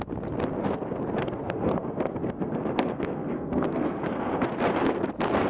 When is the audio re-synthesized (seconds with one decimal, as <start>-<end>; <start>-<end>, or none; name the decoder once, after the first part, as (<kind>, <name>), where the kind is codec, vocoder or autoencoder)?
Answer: 1.2-4.5 (codec, SNAC)